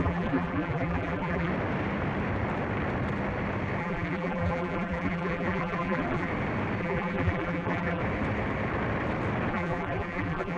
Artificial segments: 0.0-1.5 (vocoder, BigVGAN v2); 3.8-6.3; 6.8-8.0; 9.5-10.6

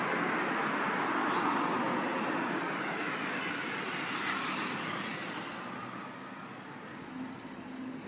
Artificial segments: 1.2-3.3 (vocoder, BigVGAN v2)

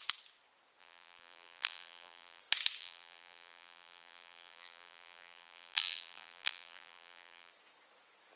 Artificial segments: 0.8-2.4 (vocoder, BigVGAN v2); 2.8-7.5

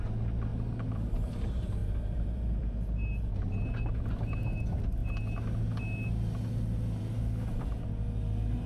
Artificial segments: 0.5-1.3 (vocoder, BigVGAN v2); 1.8-3.2

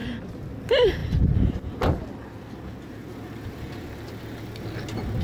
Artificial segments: none

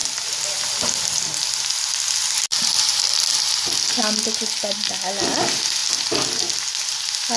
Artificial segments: 2.5-3.5 (vocoder, BigVGAN v2); 5.8-6.4